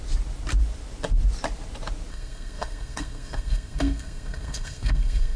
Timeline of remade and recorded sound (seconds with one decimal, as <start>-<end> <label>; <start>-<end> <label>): 0.0-2.1 recorded; 2.1-5.4 remade